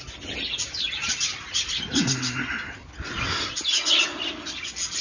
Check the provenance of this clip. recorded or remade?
recorded